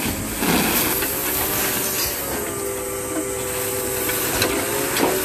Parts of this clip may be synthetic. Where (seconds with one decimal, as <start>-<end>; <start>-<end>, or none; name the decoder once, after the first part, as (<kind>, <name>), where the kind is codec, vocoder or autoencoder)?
none